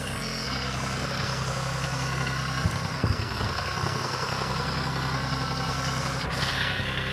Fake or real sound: fake